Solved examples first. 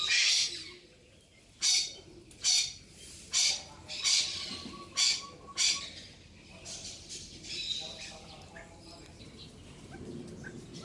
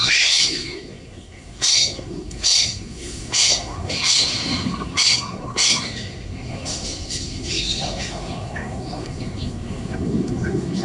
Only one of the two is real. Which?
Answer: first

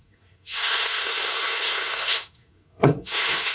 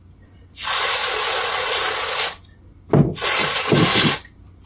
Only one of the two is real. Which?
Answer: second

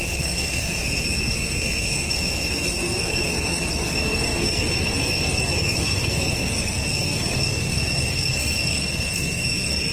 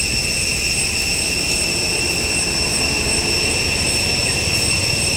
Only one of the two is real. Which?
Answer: second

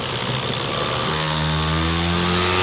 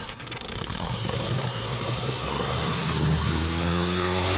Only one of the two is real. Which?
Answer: first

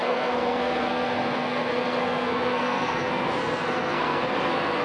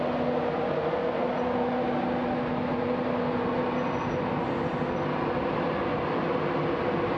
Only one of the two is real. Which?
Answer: second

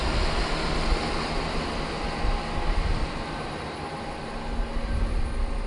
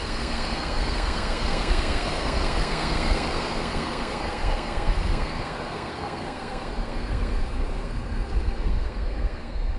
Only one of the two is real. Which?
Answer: first